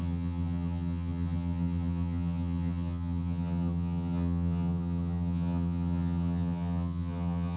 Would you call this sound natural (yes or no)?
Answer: no